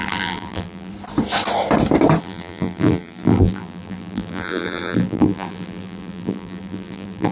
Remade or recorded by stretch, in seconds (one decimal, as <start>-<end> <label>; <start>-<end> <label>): 0.0-0.9 remade; 0.9-2.2 recorded; 2.2-7.3 remade